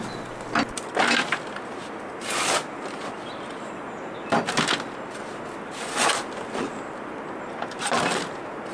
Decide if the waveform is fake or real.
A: real